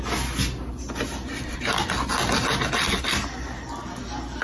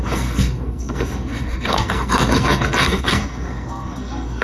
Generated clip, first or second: second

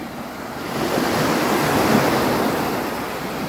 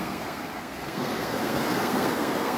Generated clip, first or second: second